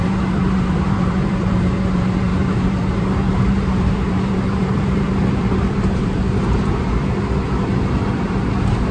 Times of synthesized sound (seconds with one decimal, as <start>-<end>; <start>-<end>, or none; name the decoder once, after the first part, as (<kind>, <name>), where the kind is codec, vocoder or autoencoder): 0.0-8.9 (vocoder, BigVGAN v2)